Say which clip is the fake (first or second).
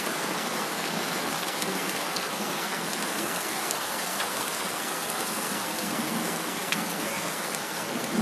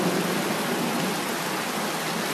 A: first